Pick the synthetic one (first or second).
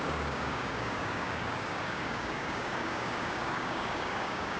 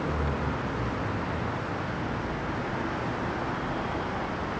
first